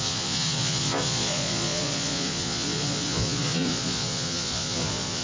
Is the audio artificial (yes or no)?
yes